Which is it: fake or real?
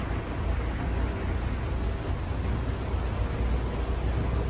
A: real